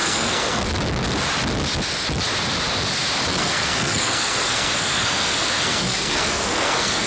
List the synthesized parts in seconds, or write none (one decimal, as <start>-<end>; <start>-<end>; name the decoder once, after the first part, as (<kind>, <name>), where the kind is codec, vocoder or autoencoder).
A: 0.0-0.7 (codec, SNAC); 3.3-7.1